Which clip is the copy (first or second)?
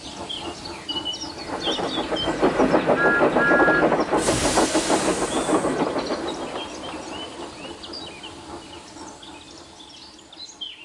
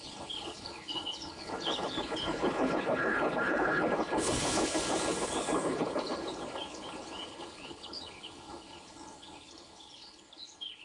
second